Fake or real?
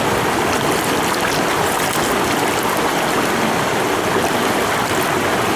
real